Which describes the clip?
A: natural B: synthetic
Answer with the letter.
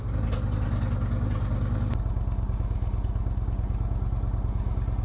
A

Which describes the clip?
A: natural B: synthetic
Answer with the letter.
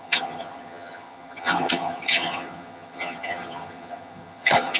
B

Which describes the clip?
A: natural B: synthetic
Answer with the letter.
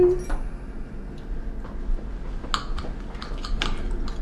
A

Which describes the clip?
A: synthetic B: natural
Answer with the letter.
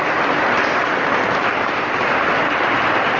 B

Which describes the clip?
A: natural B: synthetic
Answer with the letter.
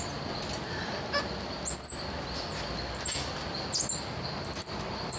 A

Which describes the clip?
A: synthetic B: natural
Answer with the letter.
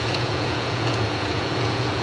A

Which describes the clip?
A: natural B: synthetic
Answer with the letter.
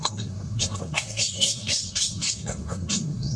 B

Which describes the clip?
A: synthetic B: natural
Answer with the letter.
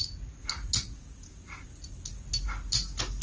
B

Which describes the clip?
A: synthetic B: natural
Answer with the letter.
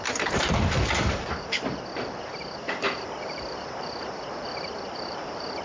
A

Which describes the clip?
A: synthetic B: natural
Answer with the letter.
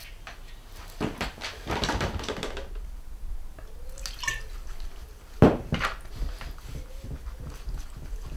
B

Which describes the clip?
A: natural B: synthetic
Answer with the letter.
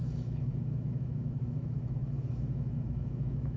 B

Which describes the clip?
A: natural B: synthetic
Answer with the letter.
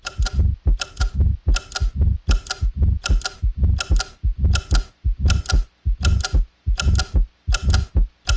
A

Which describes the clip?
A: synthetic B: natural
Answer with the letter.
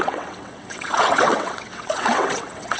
A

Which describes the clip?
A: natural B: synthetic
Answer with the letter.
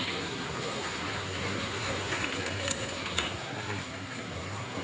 B